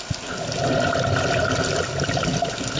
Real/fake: real